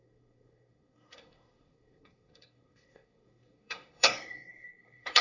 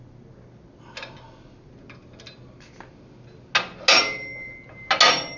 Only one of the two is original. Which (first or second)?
second